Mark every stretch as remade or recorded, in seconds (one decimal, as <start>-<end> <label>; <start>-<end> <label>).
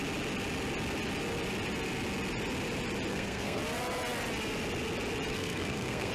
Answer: 0.0-3.1 recorded; 3.1-3.6 remade; 3.6-5.3 recorded; 5.3-6.1 remade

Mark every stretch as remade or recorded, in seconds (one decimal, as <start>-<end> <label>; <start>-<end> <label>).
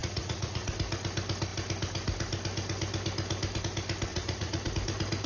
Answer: 0.0-0.7 remade; 0.7-4.1 recorded; 4.1-4.7 remade; 4.7-5.3 recorded